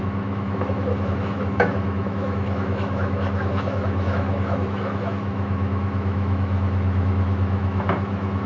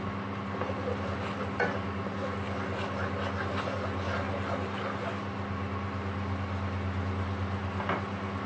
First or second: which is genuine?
second